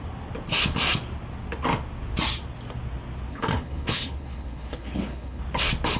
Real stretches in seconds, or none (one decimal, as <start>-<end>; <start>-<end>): 0.0-3.3; 5.4-6.0

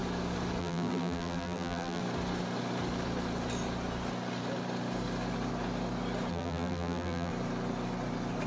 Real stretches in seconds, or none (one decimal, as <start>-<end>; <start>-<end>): 0.0-0.6; 2.0-6.3; 7.3-8.5

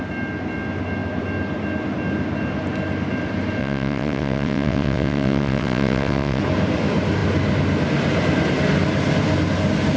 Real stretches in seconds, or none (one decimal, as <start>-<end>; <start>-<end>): 0.0-3.6; 6.4-10.0

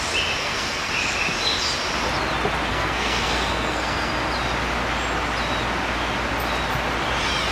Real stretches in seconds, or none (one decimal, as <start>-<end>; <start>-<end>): 0.0-0.4; 0.9-2.7; 4.1-7.5

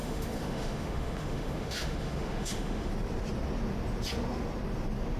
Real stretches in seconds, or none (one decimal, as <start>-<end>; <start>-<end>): 2.9-5.2

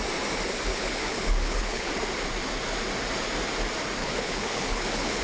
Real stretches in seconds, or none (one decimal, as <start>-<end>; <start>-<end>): 0.0-0.7; 1.9-4.0

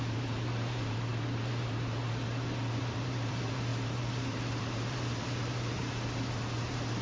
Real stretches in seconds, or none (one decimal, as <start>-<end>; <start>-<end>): none

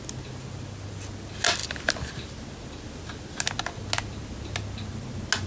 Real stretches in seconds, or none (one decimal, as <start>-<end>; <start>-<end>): 0.0-5.5